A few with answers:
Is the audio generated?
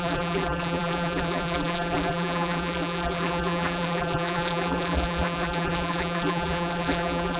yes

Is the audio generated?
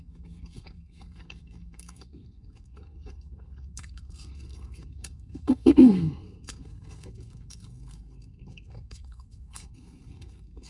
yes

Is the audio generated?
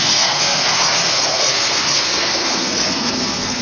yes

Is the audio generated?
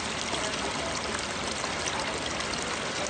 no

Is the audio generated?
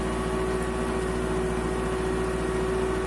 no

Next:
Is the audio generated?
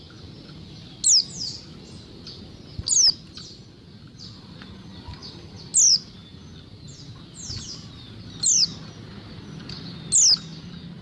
no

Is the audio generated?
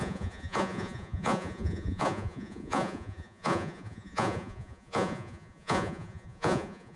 yes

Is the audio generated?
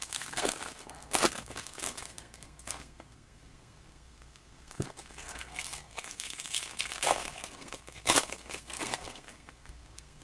yes